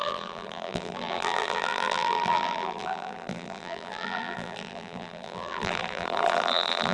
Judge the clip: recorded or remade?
remade